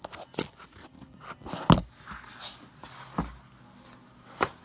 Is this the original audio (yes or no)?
yes